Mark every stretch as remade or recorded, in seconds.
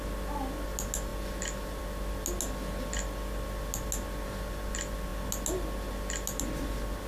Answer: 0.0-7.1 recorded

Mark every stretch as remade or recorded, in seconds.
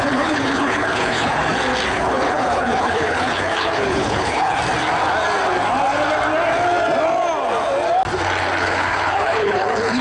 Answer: 0.0-1.4 remade; 1.4-1.9 recorded; 1.9-4.6 remade; 4.6-8.6 recorded; 8.6-10.0 remade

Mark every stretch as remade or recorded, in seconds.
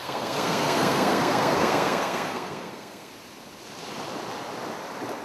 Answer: 0.0-3.1 remade; 3.1-5.2 recorded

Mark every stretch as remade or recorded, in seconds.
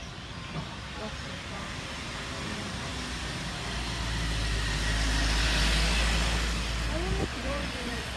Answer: 0.0-7.3 recorded; 7.3-8.2 remade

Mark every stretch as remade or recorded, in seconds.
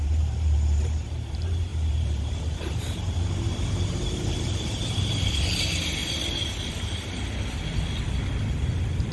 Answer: 0.0-6.0 remade; 6.0-9.1 recorded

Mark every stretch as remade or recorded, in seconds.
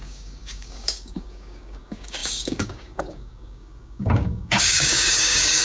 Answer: 0.0-5.6 remade